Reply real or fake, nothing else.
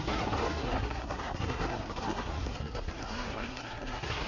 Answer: fake